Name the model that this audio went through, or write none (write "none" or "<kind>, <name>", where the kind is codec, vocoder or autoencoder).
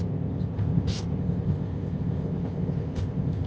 codec, ZipCodec